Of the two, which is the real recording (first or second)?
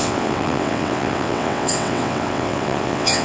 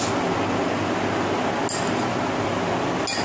second